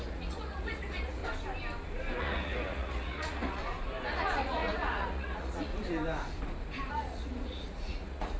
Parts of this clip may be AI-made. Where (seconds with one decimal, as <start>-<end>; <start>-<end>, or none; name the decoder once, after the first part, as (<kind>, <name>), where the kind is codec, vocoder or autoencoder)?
0.0-1.2 (vocoder, Vocos); 2.2-3.6; 4.1-5.7; 6.9-8.4